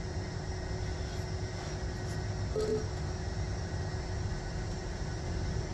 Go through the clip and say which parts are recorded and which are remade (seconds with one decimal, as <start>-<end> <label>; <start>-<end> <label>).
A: 0.0-5.7 recorded